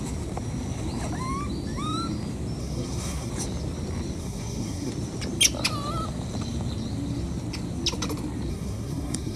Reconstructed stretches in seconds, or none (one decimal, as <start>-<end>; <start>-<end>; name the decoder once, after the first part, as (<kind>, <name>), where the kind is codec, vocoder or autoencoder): 2.6-3.3 (codec, SNAC); 4.2-4.9; 8.5-9.4